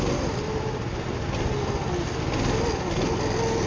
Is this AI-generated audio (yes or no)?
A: no